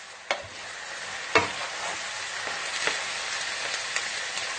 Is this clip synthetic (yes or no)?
no